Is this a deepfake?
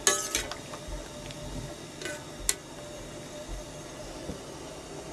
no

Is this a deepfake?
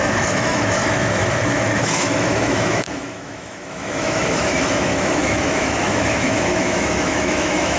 yes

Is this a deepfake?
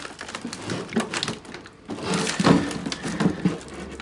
no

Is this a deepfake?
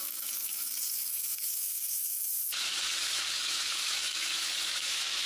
yes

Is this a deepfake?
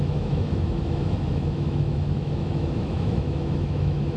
yes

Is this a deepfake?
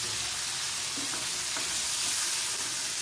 no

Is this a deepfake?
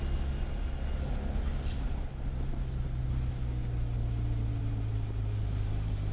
no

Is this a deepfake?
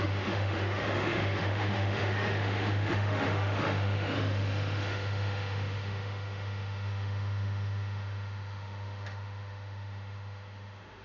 yes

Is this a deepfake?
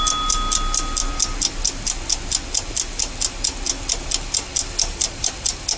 no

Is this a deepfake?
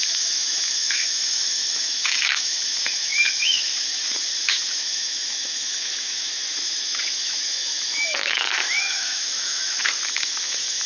yes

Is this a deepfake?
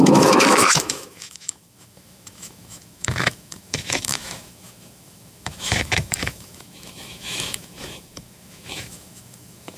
yes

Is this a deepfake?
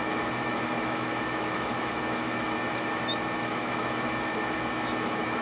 yes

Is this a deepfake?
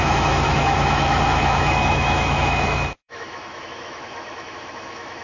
yes